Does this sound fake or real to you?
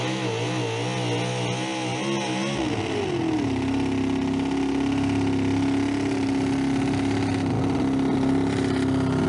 real